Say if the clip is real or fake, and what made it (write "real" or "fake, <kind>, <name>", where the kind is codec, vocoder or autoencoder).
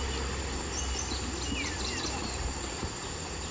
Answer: real